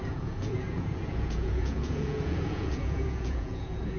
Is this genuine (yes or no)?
no